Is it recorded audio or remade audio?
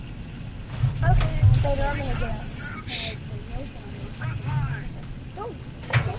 recorded